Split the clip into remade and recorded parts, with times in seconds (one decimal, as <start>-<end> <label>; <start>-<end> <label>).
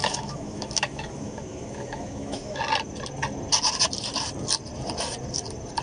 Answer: 0.0-2.6 remade; 2.6-5.8 recorded